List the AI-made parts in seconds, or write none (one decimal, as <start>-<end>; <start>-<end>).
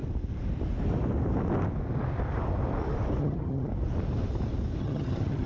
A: 3.2-3.7; 4.8-5.5